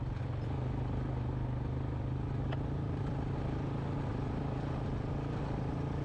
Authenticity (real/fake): real